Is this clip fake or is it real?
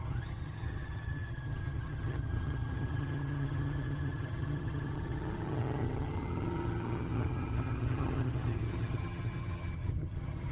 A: fake